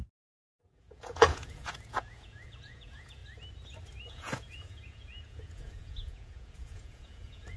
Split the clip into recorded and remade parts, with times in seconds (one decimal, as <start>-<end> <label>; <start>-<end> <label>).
0.0-3.2 remade; 3.2-4.1 recorded; 4.1-7.6 remade